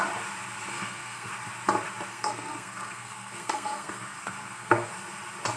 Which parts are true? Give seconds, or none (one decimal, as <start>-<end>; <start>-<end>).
0.0-0.7; 1.3-2.1; 4.9-5.6